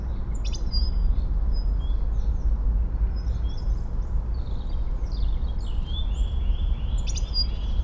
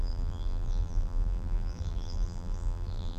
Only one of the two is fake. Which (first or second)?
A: second